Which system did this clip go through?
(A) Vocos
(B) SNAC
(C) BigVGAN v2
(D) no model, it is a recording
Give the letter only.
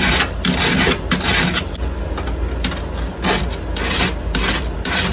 D